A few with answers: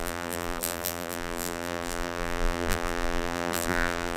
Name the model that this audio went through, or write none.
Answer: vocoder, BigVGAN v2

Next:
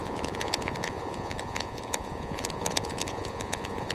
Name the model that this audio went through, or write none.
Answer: vocoder, Vocos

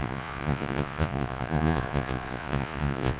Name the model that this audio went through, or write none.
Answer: vocoder, Vocos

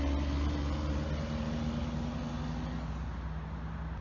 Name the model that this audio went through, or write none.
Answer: none